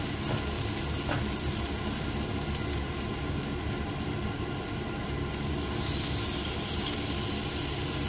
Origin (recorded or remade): recorded